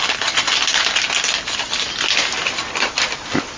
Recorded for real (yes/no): yes